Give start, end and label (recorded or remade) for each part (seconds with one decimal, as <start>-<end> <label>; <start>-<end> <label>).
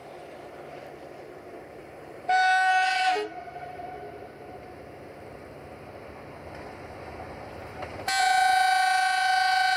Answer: 0.0-1.8 recorded; 1.8-3.8 remade; 3.8-9.8 recorded